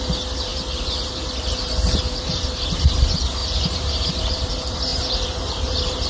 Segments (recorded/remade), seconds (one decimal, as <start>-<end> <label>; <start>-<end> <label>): 0.0-0.5 recorded; 0.5-2.9 remade; 2.9-3.4 recorded; 3.4-4.5 remade; 4.5-4.9 recorded; 4.9-6.1 remade